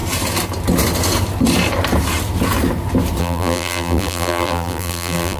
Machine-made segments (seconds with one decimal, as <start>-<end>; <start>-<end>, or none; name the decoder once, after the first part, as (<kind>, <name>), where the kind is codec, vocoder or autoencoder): 3.2-5.4 (vocoder, BigVGAN v2)